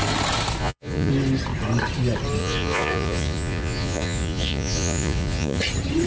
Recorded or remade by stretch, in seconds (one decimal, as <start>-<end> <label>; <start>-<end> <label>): 0.0-0.6 recorded; 0.6-1.1 remade; 1.1-2.4 recorded; 2.4-5.6 remade; 5.6-6.1 recorded